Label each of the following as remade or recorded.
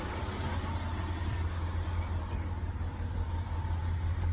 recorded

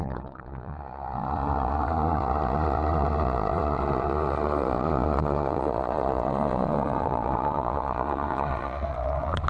remade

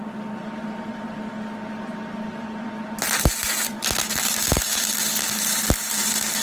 recorded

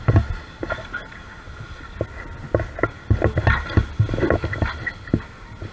recorded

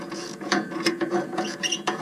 remade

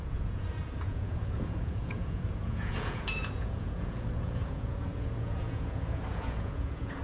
remade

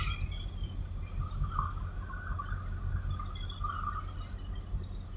recorded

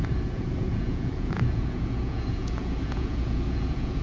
remade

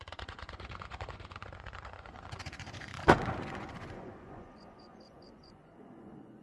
remade